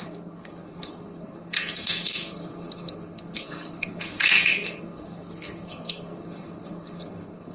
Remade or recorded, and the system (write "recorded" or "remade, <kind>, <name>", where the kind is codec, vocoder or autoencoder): remade, codec, SNAC